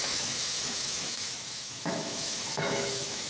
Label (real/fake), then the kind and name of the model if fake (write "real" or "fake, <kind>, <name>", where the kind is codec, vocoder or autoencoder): fake, autoencoder, DAC-VAE